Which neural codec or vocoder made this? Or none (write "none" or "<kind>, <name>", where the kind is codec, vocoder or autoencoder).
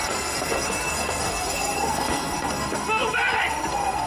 codec, SNAC